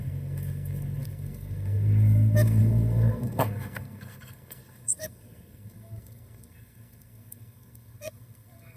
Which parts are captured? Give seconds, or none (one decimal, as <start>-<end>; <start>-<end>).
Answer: none